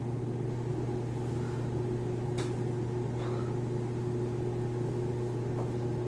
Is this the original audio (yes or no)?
yes